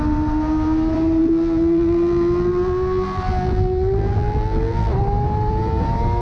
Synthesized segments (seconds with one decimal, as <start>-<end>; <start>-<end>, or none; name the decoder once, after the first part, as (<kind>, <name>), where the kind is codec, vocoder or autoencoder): 1.2-4.9 (vocoder, BigVGAN v2)